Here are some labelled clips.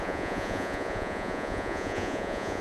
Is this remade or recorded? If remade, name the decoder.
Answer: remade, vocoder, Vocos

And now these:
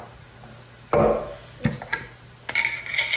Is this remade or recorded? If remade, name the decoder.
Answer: recorded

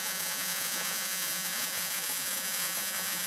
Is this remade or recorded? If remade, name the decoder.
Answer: remade, vocoder, Vocos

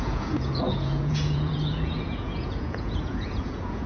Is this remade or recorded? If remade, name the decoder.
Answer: remade, vocoder, Vocos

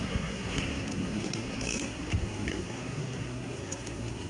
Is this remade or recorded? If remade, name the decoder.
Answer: remade, codec, SNAC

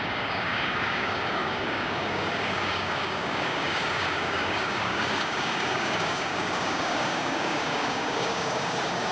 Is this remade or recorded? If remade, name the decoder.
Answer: remade, codec, DAC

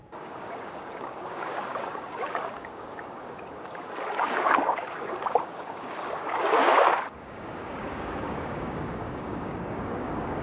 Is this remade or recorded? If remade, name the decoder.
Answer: remade, codec, DAC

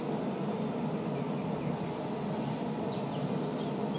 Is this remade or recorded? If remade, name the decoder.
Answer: recorded